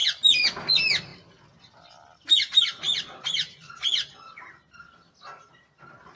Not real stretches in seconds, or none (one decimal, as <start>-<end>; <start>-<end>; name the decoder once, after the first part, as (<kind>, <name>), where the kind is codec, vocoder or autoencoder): none